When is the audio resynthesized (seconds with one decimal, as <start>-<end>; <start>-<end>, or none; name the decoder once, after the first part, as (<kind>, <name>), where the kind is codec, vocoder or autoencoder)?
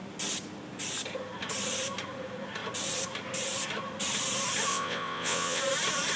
4.7-5.6 (vocoder, WaveNeXt)